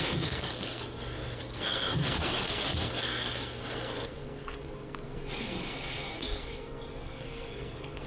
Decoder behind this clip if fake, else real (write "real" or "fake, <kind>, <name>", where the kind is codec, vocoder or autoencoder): fake, codec, SNAC